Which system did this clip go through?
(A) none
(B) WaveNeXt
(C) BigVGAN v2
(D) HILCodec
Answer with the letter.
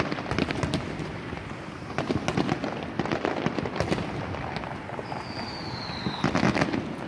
A